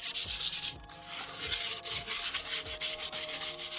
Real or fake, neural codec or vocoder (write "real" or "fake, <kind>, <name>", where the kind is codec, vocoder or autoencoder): real